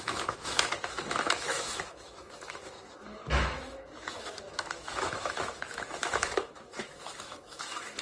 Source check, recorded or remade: remade